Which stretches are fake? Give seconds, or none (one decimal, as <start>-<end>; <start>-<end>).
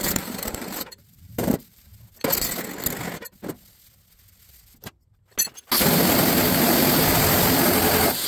0.0-1.9; 6.4-8.3